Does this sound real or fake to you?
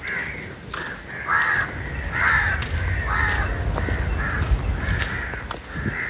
real